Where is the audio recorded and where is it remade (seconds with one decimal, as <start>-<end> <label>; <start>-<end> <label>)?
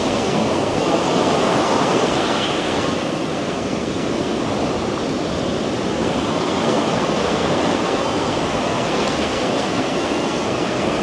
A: 0.0-4.4 remade; 4.4-5.9 recorded; 5.9-11.0 remade